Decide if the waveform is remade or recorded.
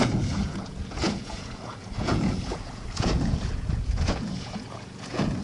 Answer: remade